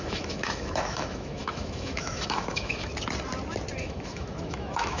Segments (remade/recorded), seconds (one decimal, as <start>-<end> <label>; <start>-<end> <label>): 0.0-2.9 remade; 2.9-3.8 recorded; 3.8-5.0 remade